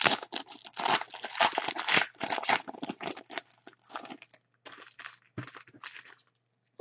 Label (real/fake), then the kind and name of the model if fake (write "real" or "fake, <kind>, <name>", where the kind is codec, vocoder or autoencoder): real